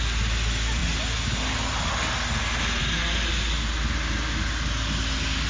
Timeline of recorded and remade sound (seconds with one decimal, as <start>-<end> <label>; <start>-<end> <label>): 0.0-5.5 recorded